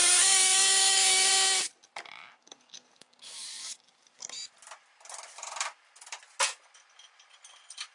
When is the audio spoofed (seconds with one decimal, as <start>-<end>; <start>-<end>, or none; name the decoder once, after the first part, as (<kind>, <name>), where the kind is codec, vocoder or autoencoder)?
0.0-1.3 (codec, DAC); 2.4-4.2